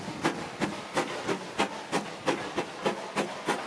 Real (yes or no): yes